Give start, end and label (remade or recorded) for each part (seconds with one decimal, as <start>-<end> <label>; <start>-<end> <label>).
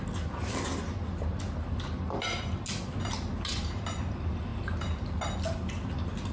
0.0-6.3 recorded